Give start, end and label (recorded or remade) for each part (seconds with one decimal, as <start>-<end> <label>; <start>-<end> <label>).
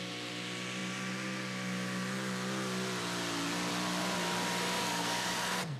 0.0-4.8 recorded; 4.8-5.8 remade